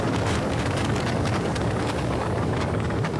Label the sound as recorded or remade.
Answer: remade